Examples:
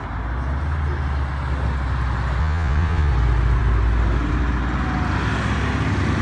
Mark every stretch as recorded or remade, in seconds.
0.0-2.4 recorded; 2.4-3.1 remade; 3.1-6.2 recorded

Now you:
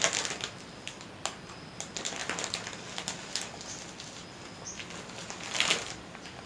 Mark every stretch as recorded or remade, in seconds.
0.0-6.5 recorded

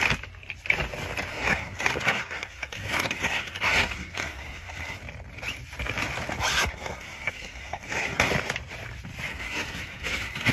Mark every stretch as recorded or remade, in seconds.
0.0-1.3 recorded; 1.3-5.0 remade; 5.0-6.5 recorded; 6.5-8.3 remade; 8.3-9.3 recorded; 9.3-10.5 remade